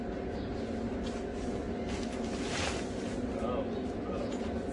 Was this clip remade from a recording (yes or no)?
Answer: no